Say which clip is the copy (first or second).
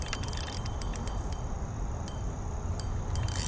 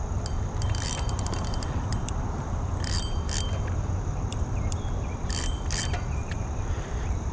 second